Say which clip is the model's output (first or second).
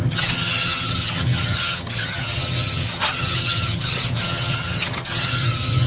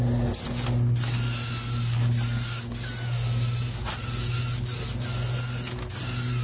first